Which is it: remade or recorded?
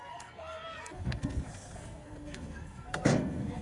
remade